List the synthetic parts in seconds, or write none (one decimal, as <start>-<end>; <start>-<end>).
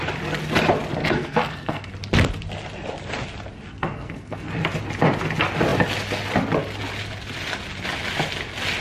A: 1.0-1.9; 3.7-4.5